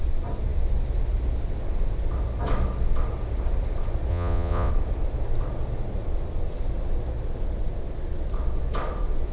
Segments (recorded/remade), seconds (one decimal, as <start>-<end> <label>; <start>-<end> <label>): 0.0-4.1 recorded; 4.1-4.7 remade; 4.7-9.3 recorded